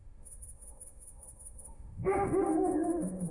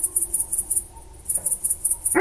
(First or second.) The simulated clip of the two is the first